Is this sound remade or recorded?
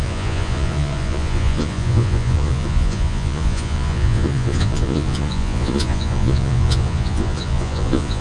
remade